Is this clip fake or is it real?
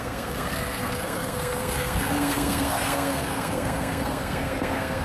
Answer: fake